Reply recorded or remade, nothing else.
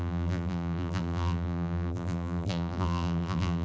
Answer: remade